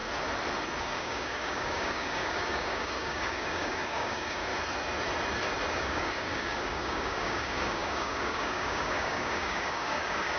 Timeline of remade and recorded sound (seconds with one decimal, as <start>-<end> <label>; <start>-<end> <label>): 0.0-0.8 recorded; 0.8-4.5 remade; 4.5-5.7 recorded; 5.7-10.4 remade